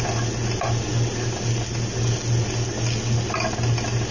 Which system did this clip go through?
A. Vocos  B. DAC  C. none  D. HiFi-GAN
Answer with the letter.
C